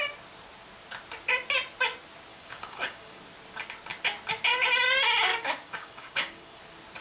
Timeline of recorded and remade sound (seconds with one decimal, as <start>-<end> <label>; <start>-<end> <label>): 0.0-2.3 recorded; 2.3-3.2 remade; 3.2-5.3 recorded; 5.3-6.6 remade; 6.6-7.0 recorded